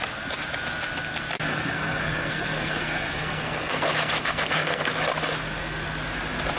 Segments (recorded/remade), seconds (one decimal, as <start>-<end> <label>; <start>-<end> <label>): 0.0-1.5 recorded; 1.5-4.9 remade; 4.9-6.6 recorded